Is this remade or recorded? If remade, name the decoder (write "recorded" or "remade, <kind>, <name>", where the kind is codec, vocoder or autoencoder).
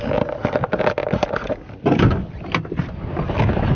recorded